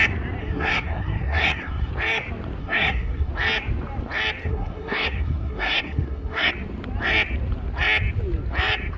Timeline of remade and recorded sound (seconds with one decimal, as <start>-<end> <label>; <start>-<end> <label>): 0.0-0.4 recorded; 0.4-1.9 remade; 1.9-2.6 recorded; 2.6-3.3 remade; 3.3-4.4 recorded; 4.4-6.5 remade; 6.5-9.0 recorded